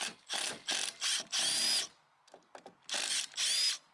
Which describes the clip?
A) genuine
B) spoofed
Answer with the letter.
A